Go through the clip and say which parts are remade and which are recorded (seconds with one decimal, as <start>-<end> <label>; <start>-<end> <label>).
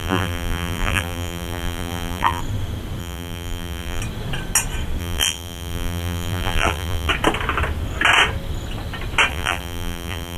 0.0-2.4 remade; 2.4-3.0 recorded; 3.0-4.0 remade; 4.0-5.0 recorded; 5.0-7.1 remade; 7.1-9.3 recorded; 9.3-10.4 remade